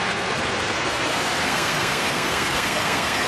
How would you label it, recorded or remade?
remade